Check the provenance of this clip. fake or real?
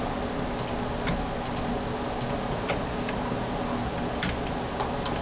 real